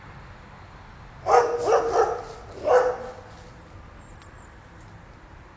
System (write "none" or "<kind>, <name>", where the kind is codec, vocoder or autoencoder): none